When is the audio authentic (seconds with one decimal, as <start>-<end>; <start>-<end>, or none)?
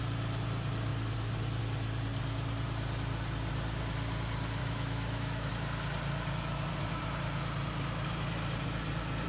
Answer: 0.0-4.6; 5.5-9.3